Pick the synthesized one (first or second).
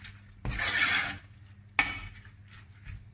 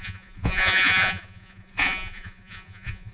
second